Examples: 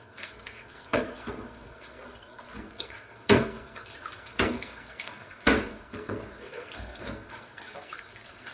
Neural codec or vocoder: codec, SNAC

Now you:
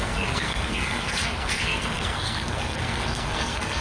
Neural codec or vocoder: codec, SNAC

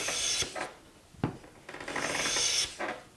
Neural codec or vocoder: none